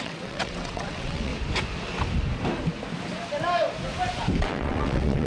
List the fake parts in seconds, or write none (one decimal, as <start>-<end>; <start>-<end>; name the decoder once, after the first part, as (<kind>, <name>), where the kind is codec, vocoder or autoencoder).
0.0-1.3 (vocoder, WaveNeXt); 4.4-5.3